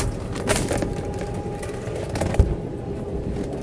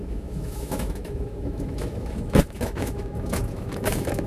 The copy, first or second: second